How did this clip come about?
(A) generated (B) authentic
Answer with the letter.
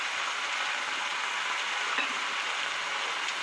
B